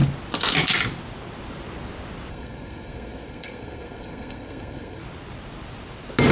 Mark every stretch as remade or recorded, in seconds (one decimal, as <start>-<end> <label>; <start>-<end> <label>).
0.0-2.3 recorded; 2.3-5.0 remade; 5.0-6.3 recorded